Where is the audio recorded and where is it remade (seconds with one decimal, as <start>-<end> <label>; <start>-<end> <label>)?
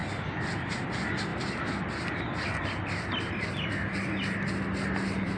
0.0-5.4 recorded